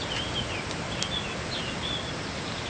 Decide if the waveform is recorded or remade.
recorded